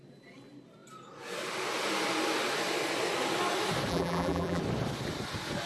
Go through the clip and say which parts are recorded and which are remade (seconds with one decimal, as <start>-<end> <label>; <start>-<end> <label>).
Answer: 0.0-3.9 recorded; 3.9-4.6 remade; 4.6-5.7 recorded